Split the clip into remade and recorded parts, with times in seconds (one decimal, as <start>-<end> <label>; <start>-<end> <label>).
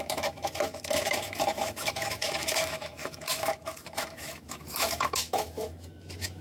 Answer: 0.0-6.4 remade